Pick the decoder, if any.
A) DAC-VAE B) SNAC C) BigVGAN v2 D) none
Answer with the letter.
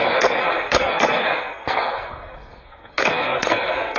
B